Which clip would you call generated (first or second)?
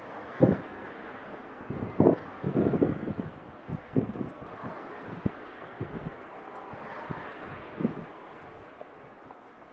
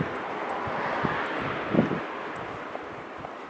first